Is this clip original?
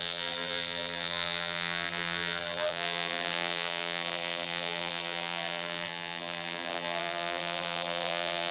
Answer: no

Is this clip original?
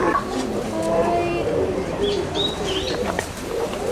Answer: no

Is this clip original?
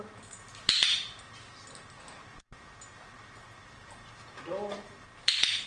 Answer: yes